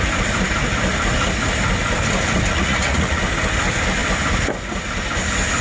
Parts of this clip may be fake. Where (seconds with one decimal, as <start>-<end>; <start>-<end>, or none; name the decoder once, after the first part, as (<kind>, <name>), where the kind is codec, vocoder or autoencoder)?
2.5-3.2 (vocoder, Vocos)